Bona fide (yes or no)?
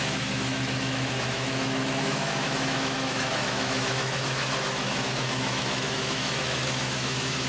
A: no